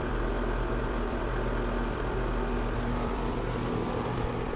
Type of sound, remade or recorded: remade